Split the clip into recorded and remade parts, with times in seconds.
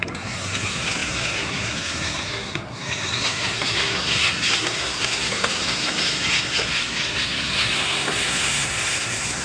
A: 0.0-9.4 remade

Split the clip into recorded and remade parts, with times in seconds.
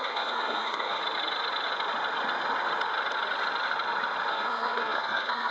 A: 0.0-1.0 remade; 1.0-4.3 recorded; 4.3-5.5 remade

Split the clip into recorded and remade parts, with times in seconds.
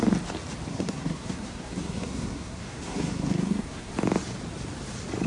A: 0.0-0.7 recorded; 0.7-3.9 remade; 3.9-5.3 recorded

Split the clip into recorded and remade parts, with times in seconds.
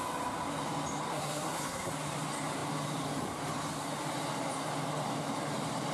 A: 0.0-1.1 recorded; 1.1-1.9 remade; 1.9-5.9 recorded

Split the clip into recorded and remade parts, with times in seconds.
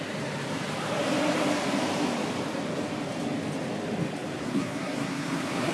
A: 0.0-4.4 recorded; 4.4-5.7 remade